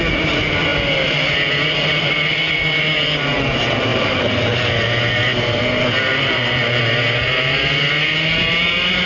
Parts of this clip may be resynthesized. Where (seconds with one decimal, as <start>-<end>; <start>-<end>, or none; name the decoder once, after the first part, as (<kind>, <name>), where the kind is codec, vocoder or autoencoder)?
3.9-4.8 (vocoder, BigVGAN v2); 6.1-6.8